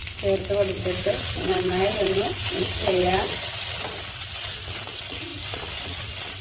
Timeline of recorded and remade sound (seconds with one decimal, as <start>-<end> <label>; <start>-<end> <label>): 0.0-1.0 recorded; 1.0-6.4 remade